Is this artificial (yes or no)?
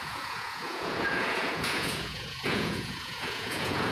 yes